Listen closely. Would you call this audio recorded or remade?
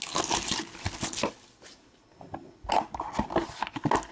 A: recorded